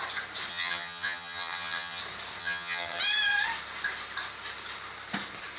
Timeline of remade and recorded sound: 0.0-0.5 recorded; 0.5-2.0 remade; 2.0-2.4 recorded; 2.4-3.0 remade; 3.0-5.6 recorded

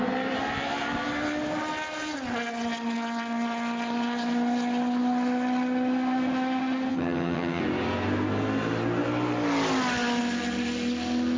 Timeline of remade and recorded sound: 0.0-6.9 recorded; 6.9-7.6 remade; 7.6-11.4 recorded